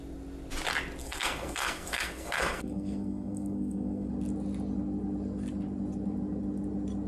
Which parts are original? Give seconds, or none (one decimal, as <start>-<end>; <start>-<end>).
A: 0.0-1.0; 4.1-7.1